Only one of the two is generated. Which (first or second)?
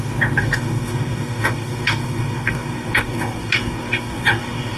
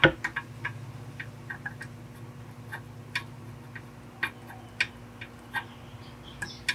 first